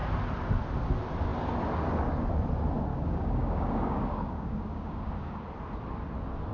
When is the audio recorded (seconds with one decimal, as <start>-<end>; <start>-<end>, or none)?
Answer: 0.0-2.9; 5.4-6.5

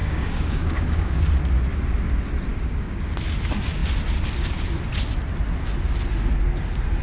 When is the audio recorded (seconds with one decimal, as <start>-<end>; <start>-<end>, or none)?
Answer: 1.2-2.5; 3.0-7.0

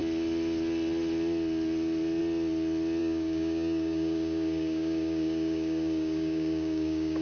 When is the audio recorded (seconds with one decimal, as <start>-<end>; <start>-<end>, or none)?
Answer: 0.0-3.0